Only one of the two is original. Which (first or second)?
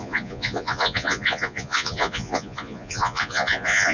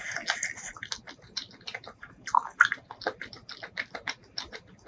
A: second